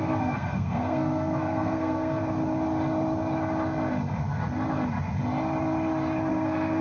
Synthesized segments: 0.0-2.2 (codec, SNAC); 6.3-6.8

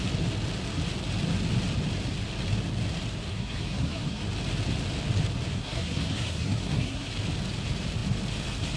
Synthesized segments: 3.3-4.2 (codec, SNAC); 5.5-7.1

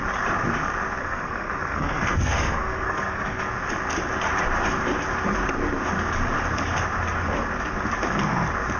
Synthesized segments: 1.0-3.5 (codec, SNAC)

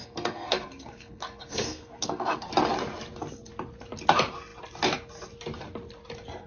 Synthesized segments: 0.0-2.5 (codec, SNAC)

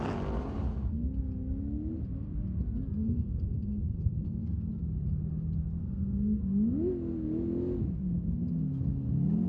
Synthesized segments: 3.0-4.7 (codec, SNAC); 5.8-6.4

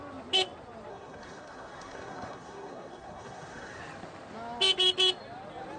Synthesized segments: 0.9-3.8 (codec, SNAC)

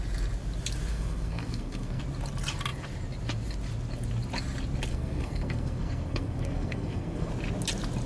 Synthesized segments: 0.9-2.0 (codec, SNAC); 4.9-7.3